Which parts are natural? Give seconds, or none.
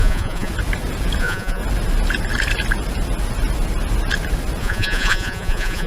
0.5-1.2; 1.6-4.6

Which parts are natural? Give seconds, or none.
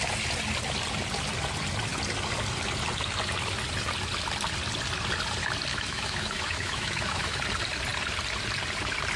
0.0-5.7; 7.4-9.2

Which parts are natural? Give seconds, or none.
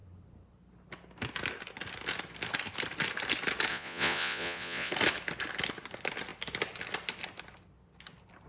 0.0-3.7; 4.9-8.5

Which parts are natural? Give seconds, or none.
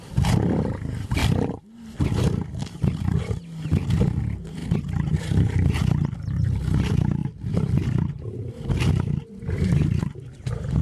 0.0-4.6; 5.5-7.2; 10.0-10.8